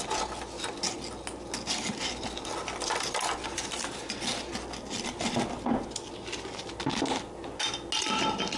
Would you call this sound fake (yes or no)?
no